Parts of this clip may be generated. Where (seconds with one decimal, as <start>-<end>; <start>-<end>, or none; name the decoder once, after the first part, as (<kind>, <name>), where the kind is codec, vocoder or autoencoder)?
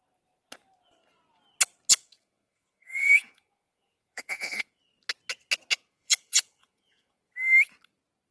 1.9-4.8 (vocoder, Vocos); 5.7-7.2